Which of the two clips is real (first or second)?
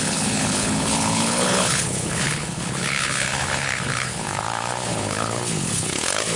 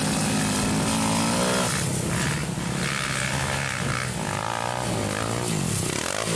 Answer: second